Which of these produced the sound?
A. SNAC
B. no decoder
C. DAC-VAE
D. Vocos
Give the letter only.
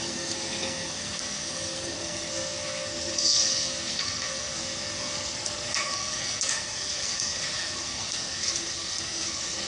A